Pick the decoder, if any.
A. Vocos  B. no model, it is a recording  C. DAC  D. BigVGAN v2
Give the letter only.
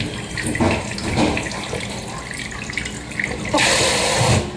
B